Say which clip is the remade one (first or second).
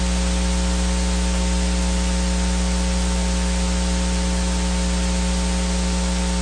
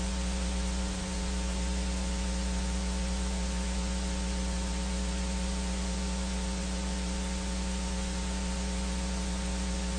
second